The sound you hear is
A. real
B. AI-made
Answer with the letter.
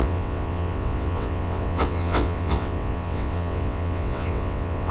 B